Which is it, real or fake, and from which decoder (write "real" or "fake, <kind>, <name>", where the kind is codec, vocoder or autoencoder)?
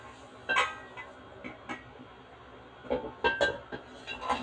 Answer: real